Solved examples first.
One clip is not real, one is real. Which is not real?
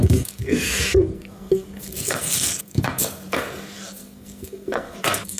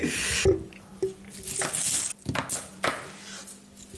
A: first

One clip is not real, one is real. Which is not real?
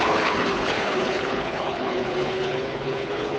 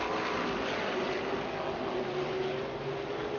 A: first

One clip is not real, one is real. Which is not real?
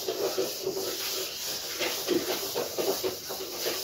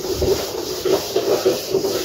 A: second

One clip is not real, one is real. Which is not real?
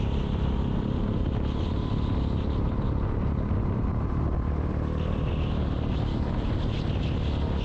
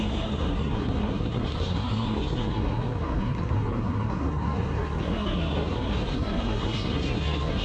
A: second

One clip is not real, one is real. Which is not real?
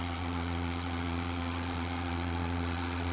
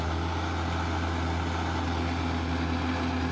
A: first